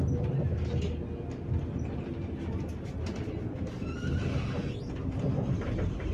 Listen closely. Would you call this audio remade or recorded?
recorded